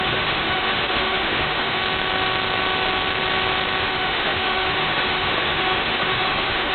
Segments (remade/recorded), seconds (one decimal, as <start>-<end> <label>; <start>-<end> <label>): 0.0-1.8 remade; 1.8-3.8 recorded; 3.8-6.7 remade